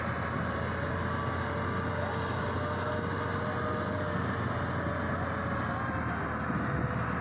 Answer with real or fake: real